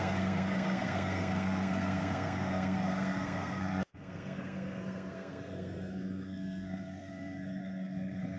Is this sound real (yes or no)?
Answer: no